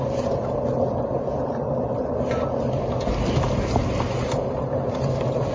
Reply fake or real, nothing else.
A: real